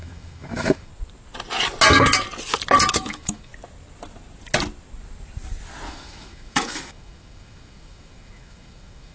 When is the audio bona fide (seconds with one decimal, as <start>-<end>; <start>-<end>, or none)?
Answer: 0.9-2.9; 3.5-5.9